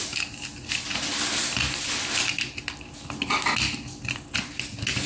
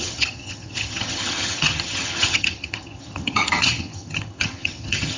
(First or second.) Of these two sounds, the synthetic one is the second